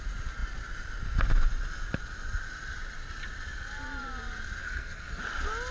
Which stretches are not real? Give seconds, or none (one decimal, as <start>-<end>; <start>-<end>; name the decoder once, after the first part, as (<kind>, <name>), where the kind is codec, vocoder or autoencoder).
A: 4.6-5.2 (codec, SNAC)